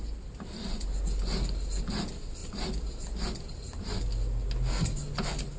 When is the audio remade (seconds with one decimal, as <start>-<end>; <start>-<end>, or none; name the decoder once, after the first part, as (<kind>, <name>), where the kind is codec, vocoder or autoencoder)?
none